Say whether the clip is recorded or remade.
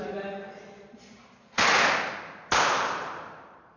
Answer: remade